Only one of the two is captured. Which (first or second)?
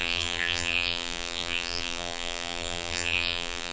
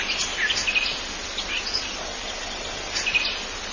second